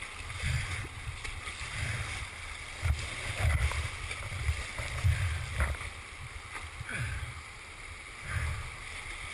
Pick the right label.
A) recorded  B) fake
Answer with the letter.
A